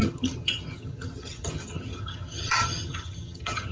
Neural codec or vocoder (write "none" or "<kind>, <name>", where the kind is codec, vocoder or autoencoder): vocoder, HiFi-GAN